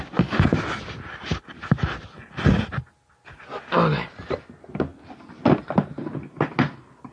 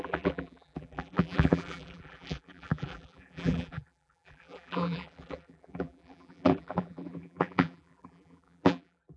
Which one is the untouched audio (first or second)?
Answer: first